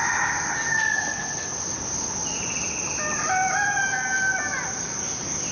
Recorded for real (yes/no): yes